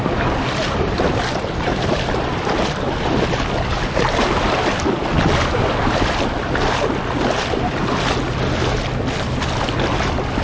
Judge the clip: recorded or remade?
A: recorded